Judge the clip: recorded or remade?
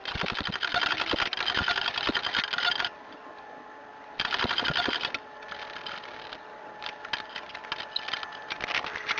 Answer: recorded